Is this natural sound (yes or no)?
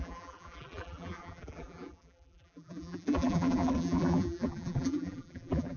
no